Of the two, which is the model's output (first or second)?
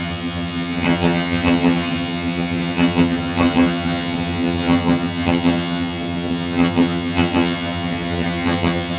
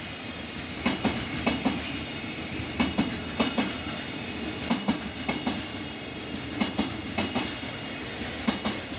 first